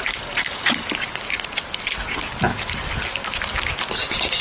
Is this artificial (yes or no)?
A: no